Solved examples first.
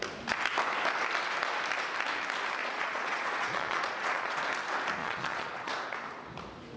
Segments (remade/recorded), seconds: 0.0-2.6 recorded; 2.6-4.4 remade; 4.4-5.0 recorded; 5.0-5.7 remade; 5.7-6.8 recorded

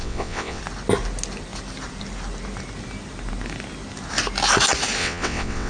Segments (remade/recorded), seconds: 0.0-0.6 remade; 0.6-5.0 recorded; 5.0-5.7 remade

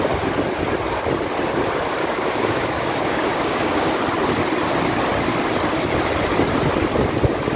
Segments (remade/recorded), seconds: 0.0-2.0 recorded; 2.0-3.9 remade; 3.9-7.6 recorded

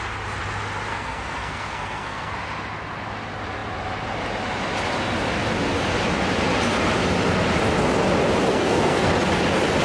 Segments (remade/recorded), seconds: 0.0-0.9 recorded; 0.9-2.3 remade; 2.3-8.5 recorded; 8.5-9.1 remade; 9.1-9.8 recorded

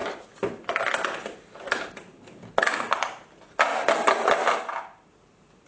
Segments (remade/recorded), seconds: 0.0-5.7 recorded